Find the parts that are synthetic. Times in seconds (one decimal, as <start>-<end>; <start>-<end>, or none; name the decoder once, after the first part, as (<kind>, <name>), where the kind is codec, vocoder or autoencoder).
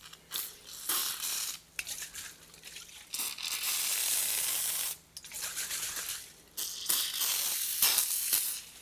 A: none